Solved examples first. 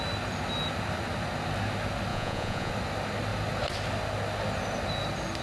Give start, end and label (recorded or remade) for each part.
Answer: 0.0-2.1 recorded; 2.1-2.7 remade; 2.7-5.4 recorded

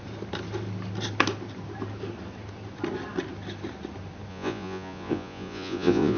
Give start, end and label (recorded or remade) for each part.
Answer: 0.0-4.3 recorded; 4.3-6.2 remade

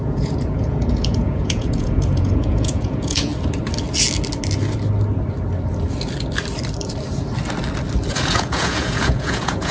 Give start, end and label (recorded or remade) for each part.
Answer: 0.0-3.3 remade; 3.3-8.1 recorded; 8.1-9.7 remade

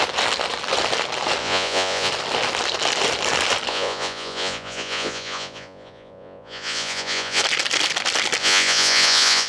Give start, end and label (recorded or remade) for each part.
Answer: 0.0-1.4 recorded; 1.4-2.1 remade; 2.1-3.7 recorded; 3.7-7.4 remade; 7.4-8.4 recorded; 8.4-9.5 remade